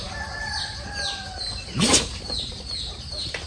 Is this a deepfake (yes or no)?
yes